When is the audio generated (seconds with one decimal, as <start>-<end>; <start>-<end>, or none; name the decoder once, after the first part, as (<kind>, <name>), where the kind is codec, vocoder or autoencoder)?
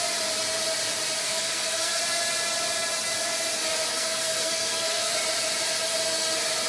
1.2-2.0 (codec, SNAC); 3.9-5.1